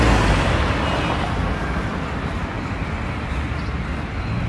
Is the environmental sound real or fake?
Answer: real